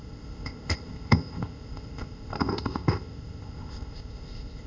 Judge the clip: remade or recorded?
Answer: remade